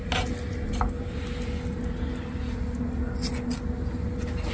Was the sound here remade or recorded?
recorded